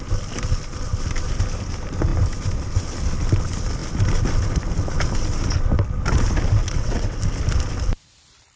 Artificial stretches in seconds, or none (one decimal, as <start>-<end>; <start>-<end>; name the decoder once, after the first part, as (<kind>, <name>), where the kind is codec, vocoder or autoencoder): 6.6-7.2 (vocoder, WaveNeXt)